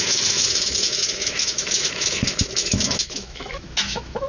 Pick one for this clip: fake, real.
fake